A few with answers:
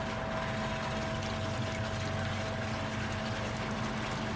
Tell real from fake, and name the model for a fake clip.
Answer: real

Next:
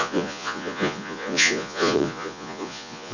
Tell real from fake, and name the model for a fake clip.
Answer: fake, vocoder, Vocos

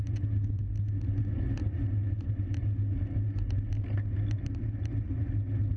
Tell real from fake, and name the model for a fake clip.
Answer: real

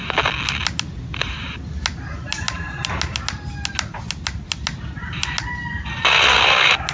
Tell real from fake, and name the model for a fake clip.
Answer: real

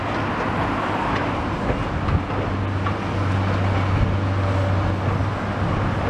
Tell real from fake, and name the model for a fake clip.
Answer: real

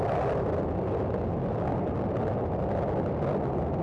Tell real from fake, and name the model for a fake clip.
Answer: real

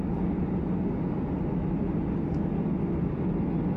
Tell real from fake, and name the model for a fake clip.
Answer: real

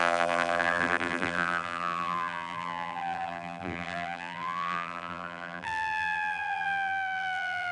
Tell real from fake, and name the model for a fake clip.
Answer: fake, vocoder, BigVGAN v2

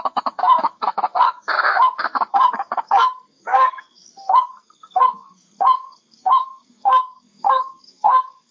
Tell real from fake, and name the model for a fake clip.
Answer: fake, codec, SNAC